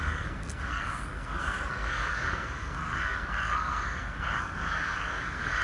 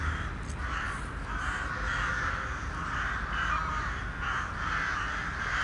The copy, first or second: first